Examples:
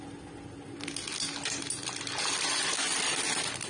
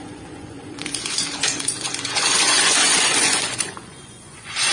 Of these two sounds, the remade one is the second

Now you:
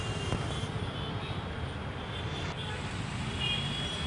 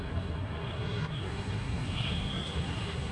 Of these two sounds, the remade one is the second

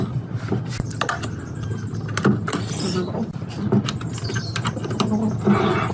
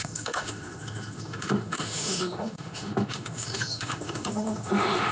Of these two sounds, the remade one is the second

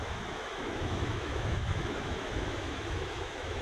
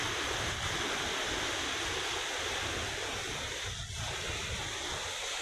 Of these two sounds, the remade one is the first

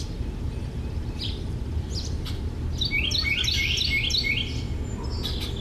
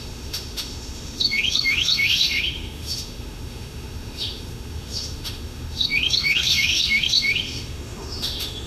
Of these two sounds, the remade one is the second